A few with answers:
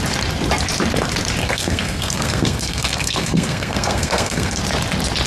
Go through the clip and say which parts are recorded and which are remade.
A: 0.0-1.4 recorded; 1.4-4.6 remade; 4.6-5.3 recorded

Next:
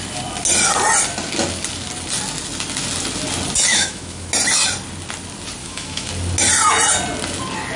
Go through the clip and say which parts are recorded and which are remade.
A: 0.0-3.7 recorded; 3.7-4.3 remade; 4.3-5.6 recorded; 5.6-6.1 remade; 6.1-7.8 recorded

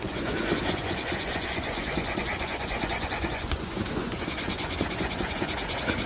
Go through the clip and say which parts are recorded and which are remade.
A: 0.0-6.1 remade

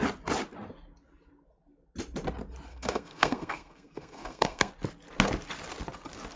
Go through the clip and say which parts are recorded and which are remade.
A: 0.0-2.7 recorded; 2.7-4.7 remade; 4.7-6.4 recorded

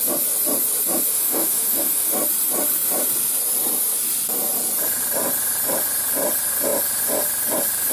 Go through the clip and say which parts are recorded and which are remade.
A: 0.0-1.1 recorded; 1.1-2.1 remade; 2.1-7.9 recorded

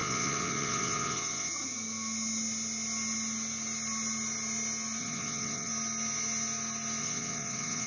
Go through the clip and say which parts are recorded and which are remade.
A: 0.0-1.5 remade; 1.5-5.0 recorded; 5.0-5.7 remade; 5.7-7.0 recorded; 7.0-7.9 remade